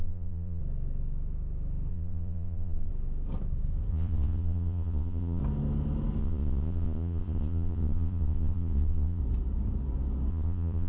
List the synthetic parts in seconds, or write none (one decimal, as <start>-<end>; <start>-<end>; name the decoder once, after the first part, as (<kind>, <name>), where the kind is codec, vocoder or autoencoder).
0.0-0.6 (vocoder, Vocos); 1.9-2.9; 3.9-5.4; 6.2-9.2; 10.3-10.9